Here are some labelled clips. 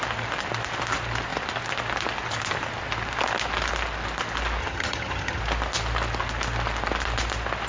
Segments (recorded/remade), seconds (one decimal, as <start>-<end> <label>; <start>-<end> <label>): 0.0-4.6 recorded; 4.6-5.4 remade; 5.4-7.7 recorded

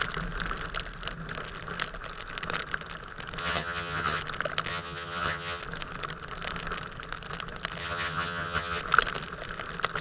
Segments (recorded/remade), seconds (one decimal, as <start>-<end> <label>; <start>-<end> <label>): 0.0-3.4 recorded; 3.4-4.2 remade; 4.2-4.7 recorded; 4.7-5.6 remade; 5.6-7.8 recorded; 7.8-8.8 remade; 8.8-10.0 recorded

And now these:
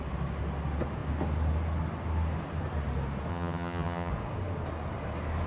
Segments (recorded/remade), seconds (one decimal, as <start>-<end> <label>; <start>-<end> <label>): 0.0-3.3 recorded; 3.3-4.1 remade; 4.1-5.5 recorded

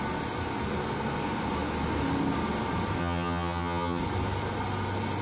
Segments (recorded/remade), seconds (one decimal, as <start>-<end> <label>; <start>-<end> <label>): 0.0-3.0 recorded; 3.0-4.0 remade; 4.0-5.2 recorded

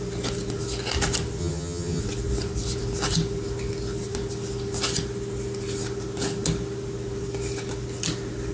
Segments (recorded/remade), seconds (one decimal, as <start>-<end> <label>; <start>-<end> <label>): 0.0-1.4 recorded; 1.4-2.0 remade; 2.0-8.5 recorded

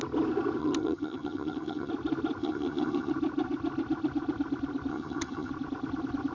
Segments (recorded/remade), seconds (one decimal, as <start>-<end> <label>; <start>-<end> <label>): 0.0-0.6 recorded; 0.6-1.9 remade; 1.9-2.4 recorded; 2.4-3.1 remade; 3.1-4.9 recorded; 4.9-5.5 remade; 5.5-6.3 recorded

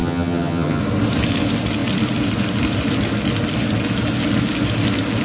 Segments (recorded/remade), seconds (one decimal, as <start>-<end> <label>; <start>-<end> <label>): 0.0-0.8 remade; 0.8-5.2 recorded